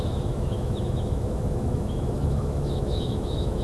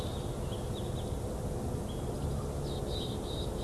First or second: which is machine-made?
first